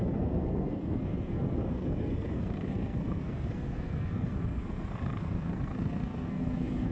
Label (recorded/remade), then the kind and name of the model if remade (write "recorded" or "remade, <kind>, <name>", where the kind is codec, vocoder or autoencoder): remade, codec, SNAC